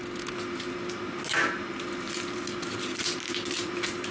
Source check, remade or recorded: recorded